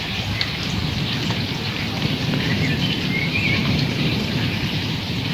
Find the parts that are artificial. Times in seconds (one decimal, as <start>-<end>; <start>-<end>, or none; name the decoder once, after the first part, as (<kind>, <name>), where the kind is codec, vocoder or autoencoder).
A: 0.0-0.8 (vocoder, BigVGAN v2); 3.2-5.3